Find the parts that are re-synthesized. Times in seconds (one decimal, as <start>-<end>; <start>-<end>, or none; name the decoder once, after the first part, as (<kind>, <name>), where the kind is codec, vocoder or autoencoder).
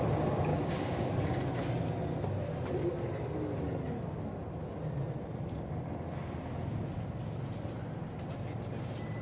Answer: 0.5-1.1 (codec, DAC)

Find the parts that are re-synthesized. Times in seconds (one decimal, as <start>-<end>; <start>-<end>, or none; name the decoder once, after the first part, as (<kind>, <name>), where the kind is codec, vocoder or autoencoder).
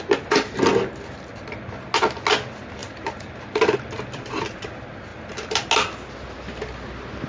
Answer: 2.8-4.5 (vocoder, BigVGAN v2)